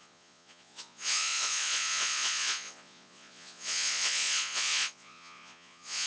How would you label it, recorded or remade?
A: remade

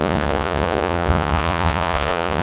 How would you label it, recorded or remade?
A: remade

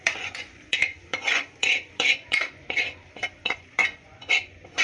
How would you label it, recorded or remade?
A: remade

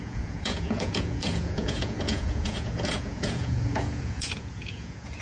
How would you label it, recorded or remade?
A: remade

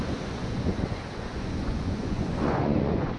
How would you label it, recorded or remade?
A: remade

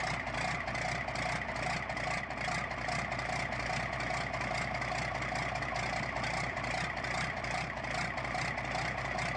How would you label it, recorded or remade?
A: recorded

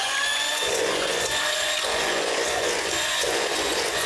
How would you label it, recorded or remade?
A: remade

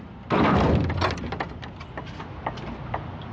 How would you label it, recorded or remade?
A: recorded